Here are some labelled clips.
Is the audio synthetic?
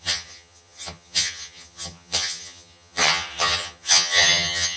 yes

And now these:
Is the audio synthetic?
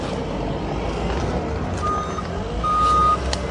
no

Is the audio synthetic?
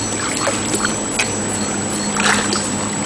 no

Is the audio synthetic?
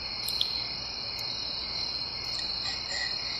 no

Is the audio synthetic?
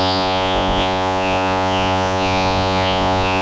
yes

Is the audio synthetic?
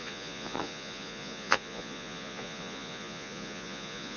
yes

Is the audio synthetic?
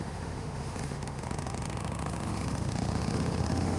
yes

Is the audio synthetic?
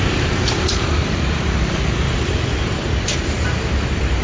yes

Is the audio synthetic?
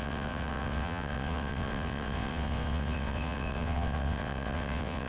yes